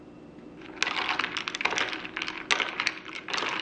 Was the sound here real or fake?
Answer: real